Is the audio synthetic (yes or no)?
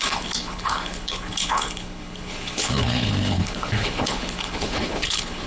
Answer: yes